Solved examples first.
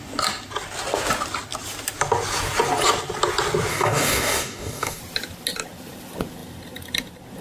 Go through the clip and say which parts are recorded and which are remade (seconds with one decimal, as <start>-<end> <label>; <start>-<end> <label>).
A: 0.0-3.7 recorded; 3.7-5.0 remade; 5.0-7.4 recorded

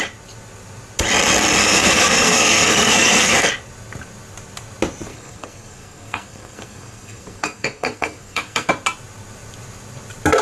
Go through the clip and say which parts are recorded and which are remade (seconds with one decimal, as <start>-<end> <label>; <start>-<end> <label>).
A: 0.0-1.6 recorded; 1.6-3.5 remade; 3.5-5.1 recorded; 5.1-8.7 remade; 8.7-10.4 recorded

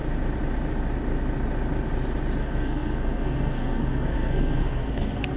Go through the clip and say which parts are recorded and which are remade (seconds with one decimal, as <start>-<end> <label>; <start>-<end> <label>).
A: 0.0-2.4 recorded; 2.4-5.4 remade